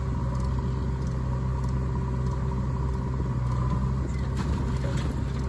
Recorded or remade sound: recorded